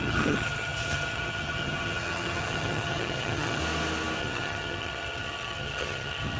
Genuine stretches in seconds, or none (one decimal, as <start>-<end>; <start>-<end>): 3.6-4.2

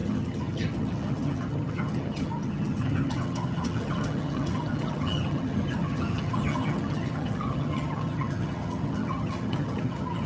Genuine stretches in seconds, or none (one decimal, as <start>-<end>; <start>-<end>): none